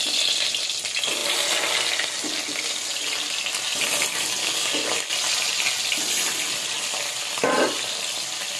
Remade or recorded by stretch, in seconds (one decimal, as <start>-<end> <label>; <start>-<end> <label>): 0.0-4.4 recorded; 4.4-4.9 remade; 4.9-8.6 recorded